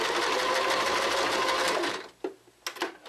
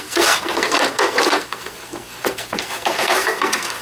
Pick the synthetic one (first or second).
second